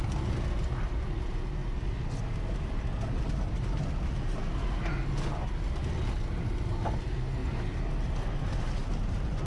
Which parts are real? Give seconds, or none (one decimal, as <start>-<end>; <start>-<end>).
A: 0.0-9.5